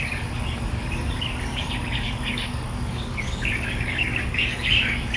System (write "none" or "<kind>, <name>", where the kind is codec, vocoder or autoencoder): codec, DAC